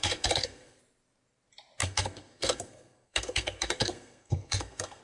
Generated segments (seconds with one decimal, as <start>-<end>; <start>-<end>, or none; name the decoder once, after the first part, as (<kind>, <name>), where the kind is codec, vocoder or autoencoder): 0.0-0.8 (codec, SNAC); 1.8-5.0